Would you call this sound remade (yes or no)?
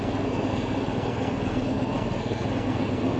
yes